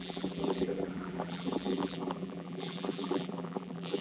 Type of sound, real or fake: fake